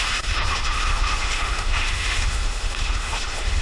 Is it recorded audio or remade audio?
remade